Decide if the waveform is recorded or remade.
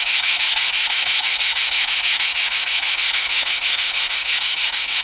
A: remade